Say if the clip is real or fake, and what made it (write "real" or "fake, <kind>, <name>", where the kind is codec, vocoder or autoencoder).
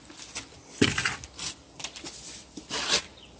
real